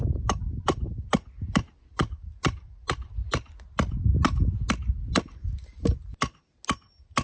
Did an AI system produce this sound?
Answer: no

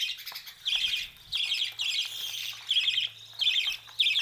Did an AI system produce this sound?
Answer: no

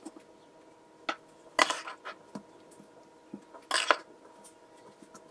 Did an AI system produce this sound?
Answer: no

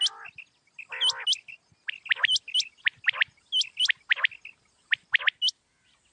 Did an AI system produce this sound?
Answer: no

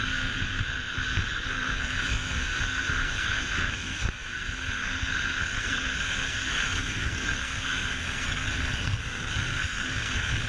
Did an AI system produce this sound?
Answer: yes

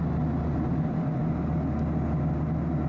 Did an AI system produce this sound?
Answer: no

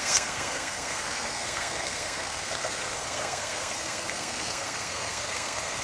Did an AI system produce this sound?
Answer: yes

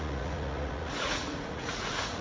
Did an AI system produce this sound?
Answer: yes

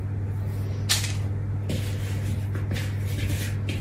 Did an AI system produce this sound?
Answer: no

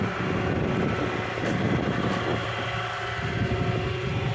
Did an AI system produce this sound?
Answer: no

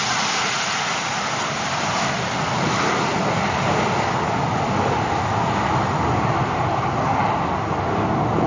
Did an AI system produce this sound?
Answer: no